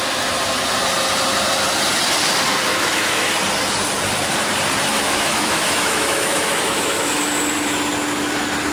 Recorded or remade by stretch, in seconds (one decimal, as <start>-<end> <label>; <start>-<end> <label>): 0.0-2.7 recorded; 2.7-3.3 remade; 3.3-4.9 recorded; 4.9-7.2 remade; 7.2-8.7 recorded